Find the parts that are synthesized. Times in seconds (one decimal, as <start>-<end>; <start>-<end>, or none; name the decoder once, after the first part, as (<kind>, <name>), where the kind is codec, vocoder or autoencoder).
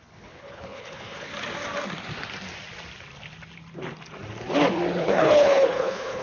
0.0-1.3 (codec, HILCodec); 5.0-6.2